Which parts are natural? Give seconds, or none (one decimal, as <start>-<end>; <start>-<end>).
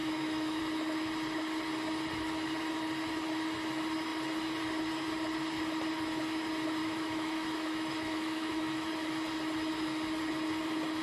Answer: 0.6-6.8; 8.9-11.0